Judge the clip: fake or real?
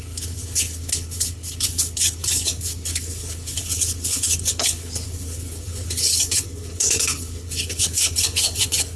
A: fake